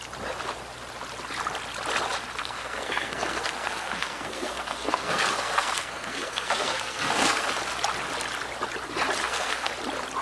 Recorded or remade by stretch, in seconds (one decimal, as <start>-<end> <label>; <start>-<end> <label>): 0.0-2.4 recorded; 2.4-7.5 remade; 7.5-9.2 recorded; 9.2-9.7 remade; 9.7-10.2 recorded